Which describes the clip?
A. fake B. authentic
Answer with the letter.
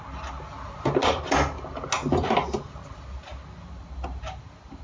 B